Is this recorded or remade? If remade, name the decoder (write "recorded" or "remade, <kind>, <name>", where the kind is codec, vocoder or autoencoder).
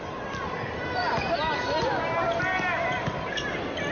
recorded